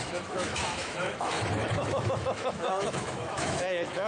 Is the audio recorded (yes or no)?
no